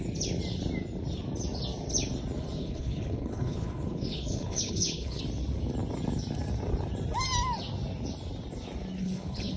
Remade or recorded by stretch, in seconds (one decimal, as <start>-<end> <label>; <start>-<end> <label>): 0.0-2.6 recorded; 2.6-5.2 remade; 5.2-9.0 recorded; 9.0-9.6 remade

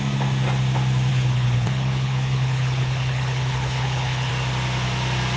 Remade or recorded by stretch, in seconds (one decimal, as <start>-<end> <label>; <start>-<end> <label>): 0.0-1.1 recorded; 1.1-4.3 remade; 4.3-5.4 recorded